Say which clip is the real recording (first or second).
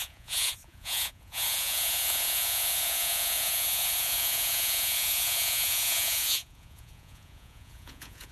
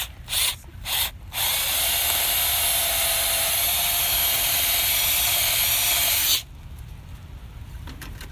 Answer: second